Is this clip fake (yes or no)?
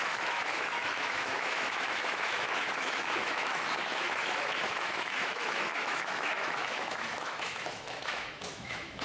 yes